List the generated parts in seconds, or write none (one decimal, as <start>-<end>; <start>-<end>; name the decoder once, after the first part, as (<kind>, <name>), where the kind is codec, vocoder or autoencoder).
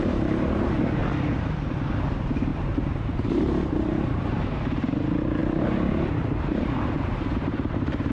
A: 0.0-1.0 (vocoder, BigVGAN v2); 2.0-8.1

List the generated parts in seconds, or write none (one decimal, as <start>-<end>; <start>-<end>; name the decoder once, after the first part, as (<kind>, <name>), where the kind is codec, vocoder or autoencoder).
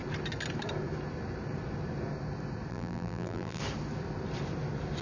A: 2.7-3.6 (vocoder, BigVGAN v2)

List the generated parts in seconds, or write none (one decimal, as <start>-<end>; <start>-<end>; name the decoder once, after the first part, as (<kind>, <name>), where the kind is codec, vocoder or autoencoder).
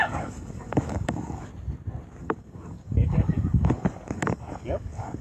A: 0.0-1.5 (codec, DAC); 2.2-5.2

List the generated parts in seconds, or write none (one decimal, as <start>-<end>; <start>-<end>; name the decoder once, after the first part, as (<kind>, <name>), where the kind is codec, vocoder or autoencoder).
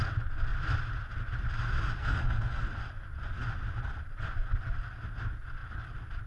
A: 2.0-2.6 (codec, SNAC)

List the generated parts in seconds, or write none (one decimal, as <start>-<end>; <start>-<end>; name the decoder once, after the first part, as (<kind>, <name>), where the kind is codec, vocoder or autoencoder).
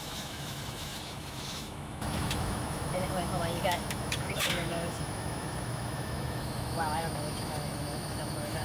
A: 0.0-8.6 (autoencoder, DAC-VAE)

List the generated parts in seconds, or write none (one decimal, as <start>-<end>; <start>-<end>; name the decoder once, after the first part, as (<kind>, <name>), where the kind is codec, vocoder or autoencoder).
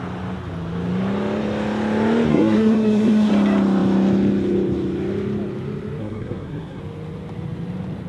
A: 2.3-3.3 (codec, SNAC); 6.0-6.8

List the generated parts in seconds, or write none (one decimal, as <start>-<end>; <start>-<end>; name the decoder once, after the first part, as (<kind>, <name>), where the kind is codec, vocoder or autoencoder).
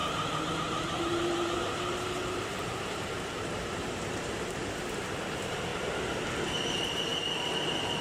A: 0.0-5.7 (vocoder, BigVGAN v2); 6.3-7.1